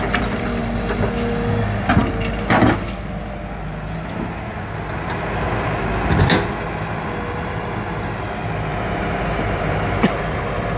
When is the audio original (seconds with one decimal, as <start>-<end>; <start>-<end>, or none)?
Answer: 0.0-8.7; 10.2-10.8